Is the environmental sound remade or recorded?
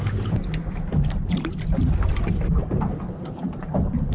recorded